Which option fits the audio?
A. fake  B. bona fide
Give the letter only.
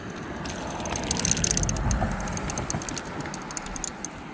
B